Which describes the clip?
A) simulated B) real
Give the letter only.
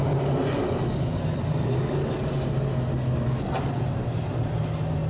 B